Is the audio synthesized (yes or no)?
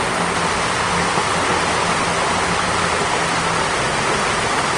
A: no